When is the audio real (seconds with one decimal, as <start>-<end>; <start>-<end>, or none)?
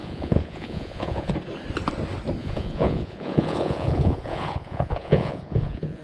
1.3-2.4